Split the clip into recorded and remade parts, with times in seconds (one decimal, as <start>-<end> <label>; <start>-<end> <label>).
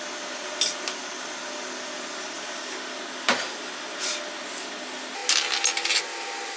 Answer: 0.0-6.6 recorded